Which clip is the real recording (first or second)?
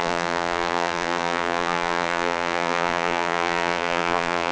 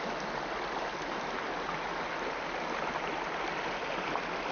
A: second